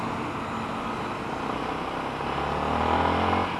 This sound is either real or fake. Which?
real